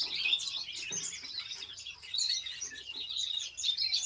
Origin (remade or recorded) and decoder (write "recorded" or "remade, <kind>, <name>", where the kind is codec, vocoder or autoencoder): recorded